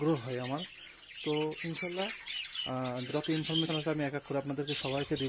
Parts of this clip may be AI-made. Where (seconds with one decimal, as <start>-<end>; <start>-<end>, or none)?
none